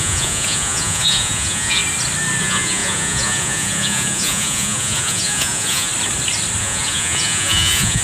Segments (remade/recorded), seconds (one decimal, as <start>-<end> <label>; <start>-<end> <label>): 0.0-1.8 remade; 1.8-2.4 recorded; 2.4-5.9 remade; 5.9-6.6 recorded; 6.6-8.0 remade